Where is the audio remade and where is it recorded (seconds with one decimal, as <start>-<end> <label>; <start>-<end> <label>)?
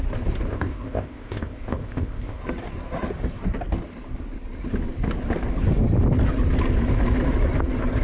0.0-0.5 recorded; 0.5-2.4 remade; 2.4-8.0 recorded